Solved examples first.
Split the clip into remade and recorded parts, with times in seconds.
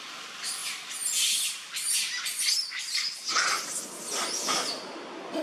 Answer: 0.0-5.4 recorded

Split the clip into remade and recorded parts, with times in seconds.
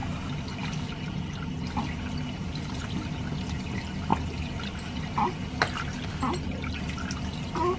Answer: 0.0-7.8 recorded